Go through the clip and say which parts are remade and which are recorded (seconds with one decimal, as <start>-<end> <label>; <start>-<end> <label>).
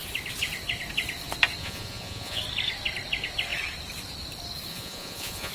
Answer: 0.0-1.6 recorded; 1.6-2.4 remade; 2.4-4.7 recorded; 4.7-5.5 remade